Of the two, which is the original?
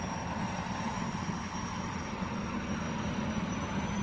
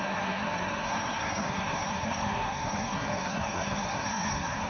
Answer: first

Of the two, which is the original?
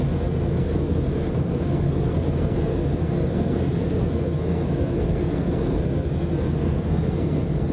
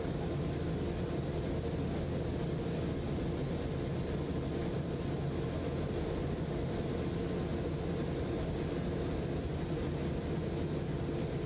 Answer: second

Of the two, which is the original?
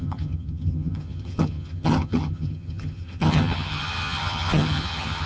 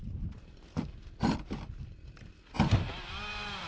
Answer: second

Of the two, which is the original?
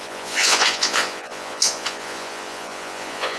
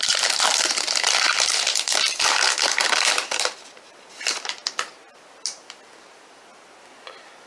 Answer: second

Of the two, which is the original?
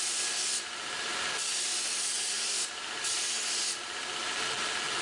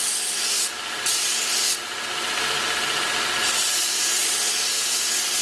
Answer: second